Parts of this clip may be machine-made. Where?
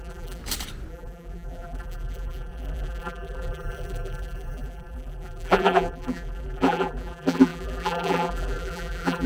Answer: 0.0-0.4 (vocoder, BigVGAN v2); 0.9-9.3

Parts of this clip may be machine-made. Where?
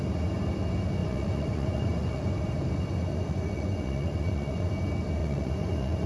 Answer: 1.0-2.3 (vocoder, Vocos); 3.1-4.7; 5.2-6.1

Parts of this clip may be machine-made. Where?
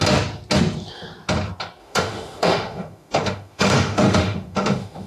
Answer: 1.8-5.1 (autoencoder, DAC-VAE)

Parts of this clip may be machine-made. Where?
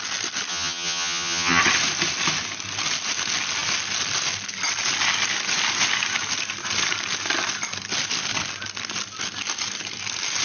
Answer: 0.5-1.6 (vocoder, HiFi-GAN)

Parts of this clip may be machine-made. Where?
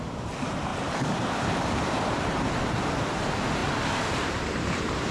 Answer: 0.0-0.7 (vocoder, BigVGAN v2); 2.3-3.6; 4.1-5.1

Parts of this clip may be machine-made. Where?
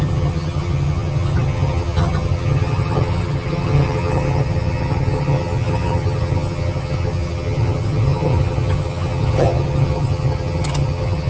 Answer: 0.0-11.3 (vocoder, HiFi-GAN)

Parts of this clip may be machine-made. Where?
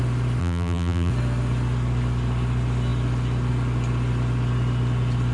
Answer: 0.4-1.1 (vocoder, BigVGAN v2)